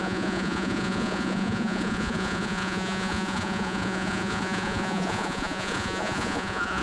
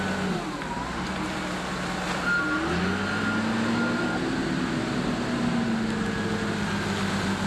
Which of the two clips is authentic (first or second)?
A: second